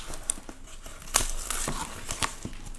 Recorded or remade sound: recorded